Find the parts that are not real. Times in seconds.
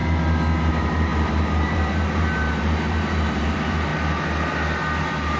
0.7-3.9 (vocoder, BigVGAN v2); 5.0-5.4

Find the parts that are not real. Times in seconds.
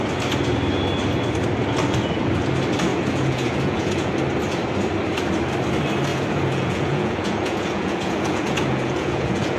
2.9-4.1 (vocoder, Vocos); 6.1-9.6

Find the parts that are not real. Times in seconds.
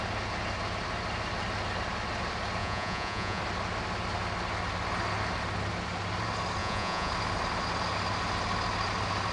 2.6-3.4 (vocoder, Vocos); 6.6-7.1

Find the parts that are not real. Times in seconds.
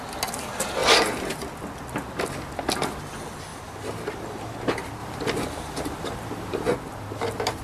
3.5-4.6 (vocoder, BigVGAN v2); 5.0-6.7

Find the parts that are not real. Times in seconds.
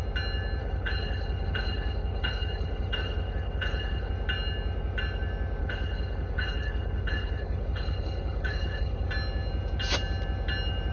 0.6-4.1 (codec, HILCodec); 5.6-9.1